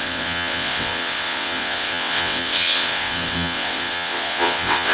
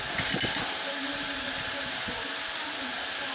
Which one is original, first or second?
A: second